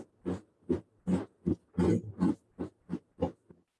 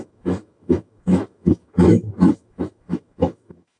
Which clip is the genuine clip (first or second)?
first